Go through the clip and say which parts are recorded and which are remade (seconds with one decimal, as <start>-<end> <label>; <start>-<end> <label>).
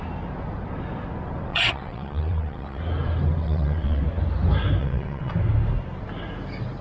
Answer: 0.0-1.5 recorded; 1.5-2.8 remade; 2.8-3.4 recorded; 3.4-4.0 remade; 4.0-4.8 recorded; 4.8-5.3 remade; 5.3-6.8 recorded